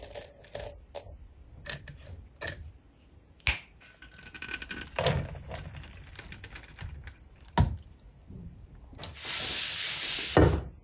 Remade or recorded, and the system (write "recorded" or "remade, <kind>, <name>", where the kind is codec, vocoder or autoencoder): recorded